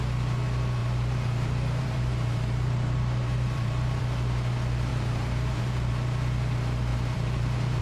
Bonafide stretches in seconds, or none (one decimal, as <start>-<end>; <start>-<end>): 0.0-0.8; 4.0-4.9; 5.9-6.9